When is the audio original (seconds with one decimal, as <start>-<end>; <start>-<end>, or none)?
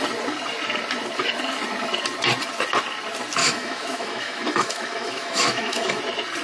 0.0-3.4; 6.0-6.4